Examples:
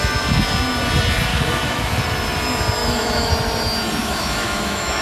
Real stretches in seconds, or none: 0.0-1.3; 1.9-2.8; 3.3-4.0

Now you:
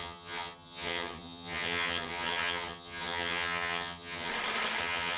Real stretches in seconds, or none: 4.3-4.8

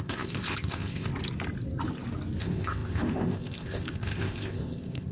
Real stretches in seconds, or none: 1.1-2.4